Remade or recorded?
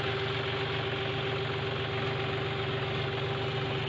recorded